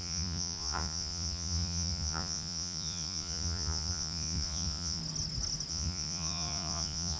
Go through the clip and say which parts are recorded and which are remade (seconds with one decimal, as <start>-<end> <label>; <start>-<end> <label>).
0.0-5.0 remade; 5.0-5.7 recorded; 5.7-7.2 remade